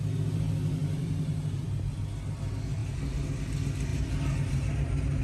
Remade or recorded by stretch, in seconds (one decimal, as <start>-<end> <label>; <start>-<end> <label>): 0.0-0.8 recorded; 0.8-1.8 remade; 1.8-3.9 recorded; 3.9-5.2 remade